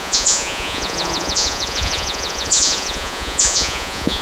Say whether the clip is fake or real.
fake